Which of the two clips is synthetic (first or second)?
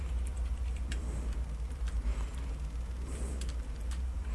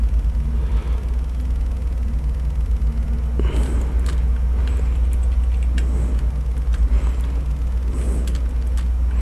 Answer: first